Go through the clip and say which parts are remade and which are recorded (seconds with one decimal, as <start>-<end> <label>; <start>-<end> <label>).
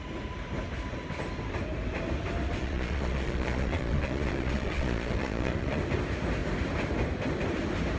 0.0-2.6 recorded; 2.6-5.8 remade; 5.8-8.0 recorded